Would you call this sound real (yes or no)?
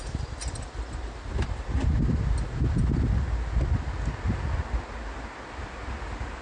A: yes